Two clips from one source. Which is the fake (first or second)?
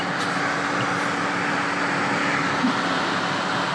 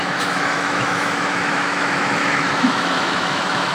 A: second